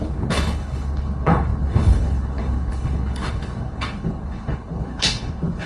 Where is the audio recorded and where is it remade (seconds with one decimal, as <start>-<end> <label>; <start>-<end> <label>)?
0.0-5.7 remade